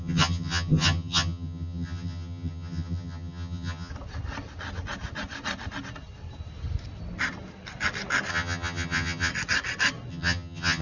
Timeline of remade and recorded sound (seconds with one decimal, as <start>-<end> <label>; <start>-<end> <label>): 0.0-3.9 remade; 3.9-8.3 recorded; 8.3-9.3 remade; 9.3-10.1 recorded; 10.1-10.8 remade